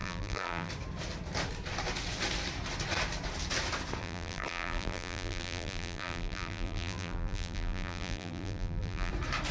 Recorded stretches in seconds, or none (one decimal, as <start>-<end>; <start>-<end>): 0.7-4.0; 9.1-9.5